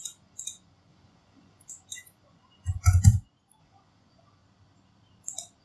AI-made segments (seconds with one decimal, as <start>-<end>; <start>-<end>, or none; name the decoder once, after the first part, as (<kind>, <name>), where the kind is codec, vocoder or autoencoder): 0.0-3.1 (vocoder, Vocos); 3.6-4.4